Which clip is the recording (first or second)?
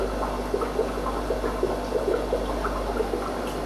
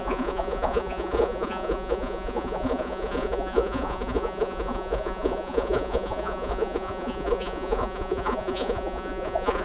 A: first